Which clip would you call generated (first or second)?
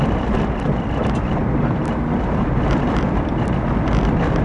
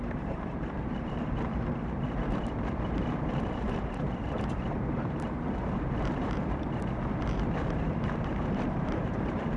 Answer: second